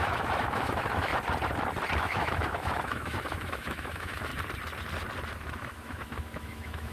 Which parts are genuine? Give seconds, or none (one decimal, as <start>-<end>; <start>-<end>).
1.1-2.0; 4.3-5.5